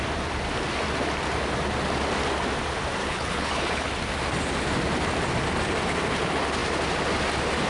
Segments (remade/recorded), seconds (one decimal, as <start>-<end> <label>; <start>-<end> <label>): 0.0-3.0 recorded; 3.0-3.9 remade; 3.9-7.7 recorded